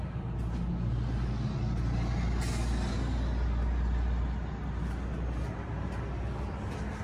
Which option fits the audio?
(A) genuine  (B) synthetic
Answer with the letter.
A